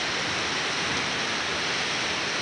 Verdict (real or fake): real